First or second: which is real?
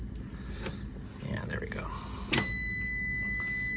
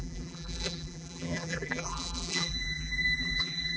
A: first